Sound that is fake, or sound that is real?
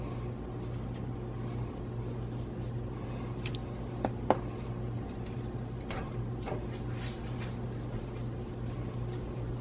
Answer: real